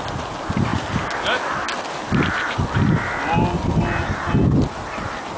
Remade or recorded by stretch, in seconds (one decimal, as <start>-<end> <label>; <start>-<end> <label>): 0.0-5.4 recorded

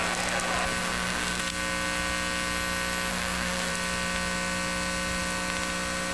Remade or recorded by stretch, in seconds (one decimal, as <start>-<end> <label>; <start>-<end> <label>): 0.0-0.8 recorded; 0.8-1.4 remade; 1.4-3.1 recorded; 3.1-3.7 remade; 3.7-6.1 recorded

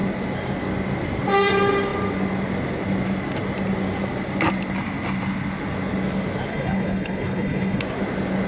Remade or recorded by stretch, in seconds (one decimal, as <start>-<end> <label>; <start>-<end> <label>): 0.0-6.5 recorded; 6.5-7.8 remade; 7.8-8.5 recorded

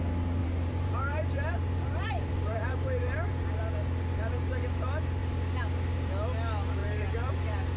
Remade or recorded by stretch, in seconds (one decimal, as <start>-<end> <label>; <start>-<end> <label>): 0.0-0.4 recorded; 0.4-3.3 remade; 3.3-6.8 recorded; 6.8-7.3 remade; 7.3-7.8 recorded

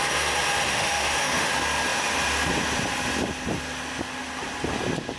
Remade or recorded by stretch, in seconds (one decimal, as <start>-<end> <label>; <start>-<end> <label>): 0.0-0.7 recorded; 0.7-1.5 remade; 1.5-5.2 recorded

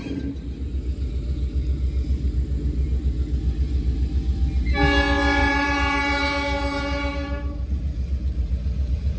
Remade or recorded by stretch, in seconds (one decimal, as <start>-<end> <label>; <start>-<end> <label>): 0.0-5.4 recorded; 5.4-9.2 remade

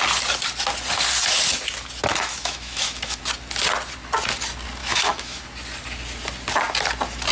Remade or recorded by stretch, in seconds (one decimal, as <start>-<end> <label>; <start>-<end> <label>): 0.0-2.1 recorded; 2.1-3.2 remade; 3.2-4.8 recorded; 4.8-5.4 remade; 5.4-7.3 recorded

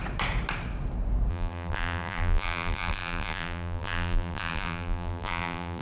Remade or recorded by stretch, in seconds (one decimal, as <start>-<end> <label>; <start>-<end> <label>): 0.0-1.3 recorded; 1.3-5.8 remade